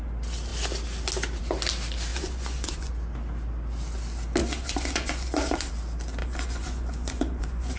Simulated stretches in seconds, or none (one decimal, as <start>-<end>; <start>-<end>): 2.1-2.9; 4.4-5.7; 6.2-7.8